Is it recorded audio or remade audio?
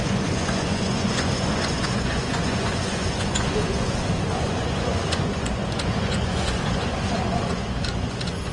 remade